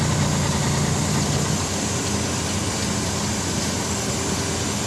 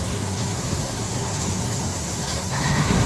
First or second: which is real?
first